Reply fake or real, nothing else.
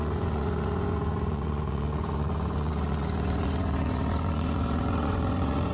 fake